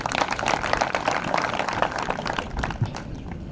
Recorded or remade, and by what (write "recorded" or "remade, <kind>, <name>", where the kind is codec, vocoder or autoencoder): remade, vocoder, BigVGAN v2